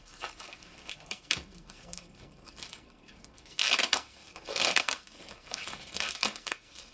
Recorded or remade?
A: remade